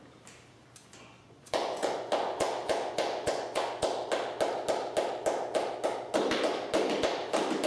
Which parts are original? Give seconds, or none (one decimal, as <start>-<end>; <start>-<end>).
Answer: 0.0-0.8; 3.8-7.7